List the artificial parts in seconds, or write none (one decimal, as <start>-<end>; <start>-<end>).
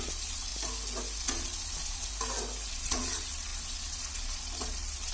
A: 0.0-0.5; 1.2-2.1; 2.7-5.1